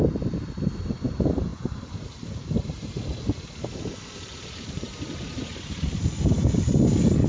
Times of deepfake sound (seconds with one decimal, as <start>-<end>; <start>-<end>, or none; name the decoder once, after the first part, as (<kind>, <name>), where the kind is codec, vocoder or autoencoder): 1.5-2.9 (vocoder, BigVGAN v2); 4.3-6.4